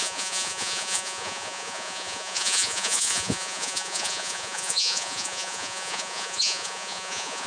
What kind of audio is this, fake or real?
fake